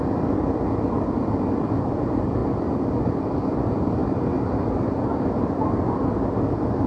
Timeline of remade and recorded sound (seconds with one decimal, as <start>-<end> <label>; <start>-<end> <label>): 0.0-6.9 recorded